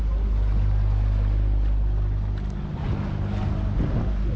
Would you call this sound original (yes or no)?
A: yes